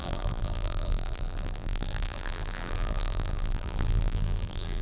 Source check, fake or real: fake